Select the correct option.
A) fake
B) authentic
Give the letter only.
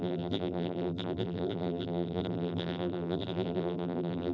A